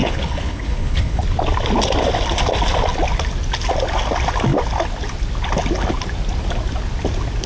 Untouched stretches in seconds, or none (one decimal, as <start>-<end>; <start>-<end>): 1.2-7.5